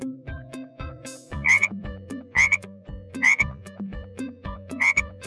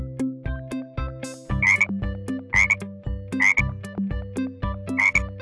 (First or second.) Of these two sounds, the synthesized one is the first